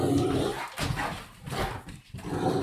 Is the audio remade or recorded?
recorded